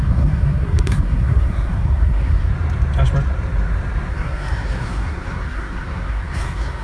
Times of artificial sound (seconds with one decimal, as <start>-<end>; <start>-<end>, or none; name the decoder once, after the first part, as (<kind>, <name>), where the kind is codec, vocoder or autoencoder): 0.0-2.5 (codec, SNAC); 4.1-6.8